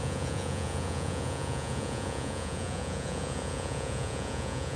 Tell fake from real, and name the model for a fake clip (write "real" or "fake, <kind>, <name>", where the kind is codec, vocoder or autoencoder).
fake, vocoder, Vocos